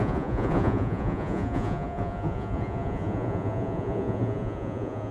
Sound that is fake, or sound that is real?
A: fake